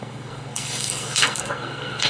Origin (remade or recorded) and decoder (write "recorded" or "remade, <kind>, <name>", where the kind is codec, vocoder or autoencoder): remade, codec, SNAC